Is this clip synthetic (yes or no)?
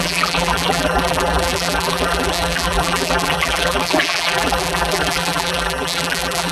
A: yes